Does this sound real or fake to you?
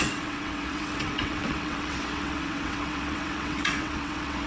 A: fake